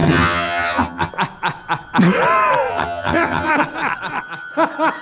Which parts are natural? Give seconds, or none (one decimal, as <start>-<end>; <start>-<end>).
1.1-2.7; 3.5-5.0